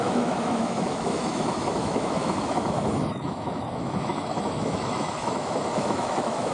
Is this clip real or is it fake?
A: fake